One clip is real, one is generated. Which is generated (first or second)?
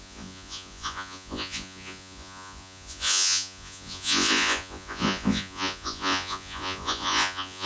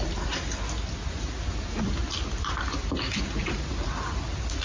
first